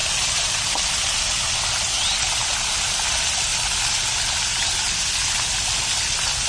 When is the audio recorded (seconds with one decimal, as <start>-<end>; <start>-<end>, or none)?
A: 0.0-6.5